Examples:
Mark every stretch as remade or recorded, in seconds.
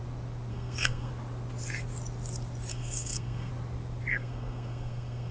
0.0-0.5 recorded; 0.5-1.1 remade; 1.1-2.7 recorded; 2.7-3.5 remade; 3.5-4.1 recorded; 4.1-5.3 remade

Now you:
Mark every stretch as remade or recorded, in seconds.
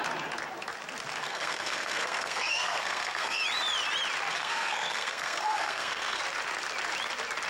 0.0-1.2 recorded; 1.2-3.4 remade; 3.4-4.3 recorded; 4.3-6.2 remade; 6.2-7.5 recorded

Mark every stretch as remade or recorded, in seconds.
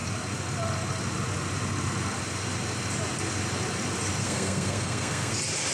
0.0-4.2 recorded; 4.2-5.3 remade; 5.3-5.7 recorded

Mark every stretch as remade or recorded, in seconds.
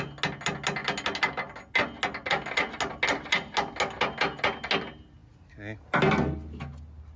0.0-7.2 recorded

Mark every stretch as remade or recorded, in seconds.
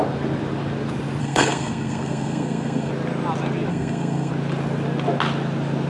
0.0-1.2 recorded; 1.2-2.9 remade; 2.9-3.7 recorded; 3.7-4.3 remade; 4.3-5.9 recorded